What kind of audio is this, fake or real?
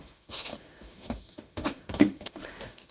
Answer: fake